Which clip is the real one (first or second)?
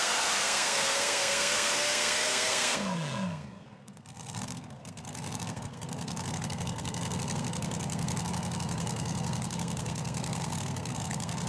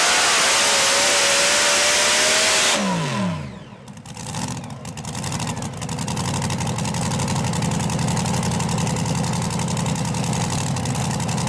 second